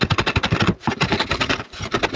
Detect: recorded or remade recorded